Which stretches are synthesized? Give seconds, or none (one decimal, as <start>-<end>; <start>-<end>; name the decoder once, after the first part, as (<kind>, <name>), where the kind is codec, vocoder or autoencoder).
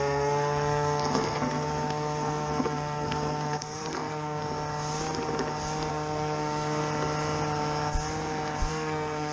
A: 0.0-4.4 (codec, SNAC); 5.9-6.8; 8.7-9.3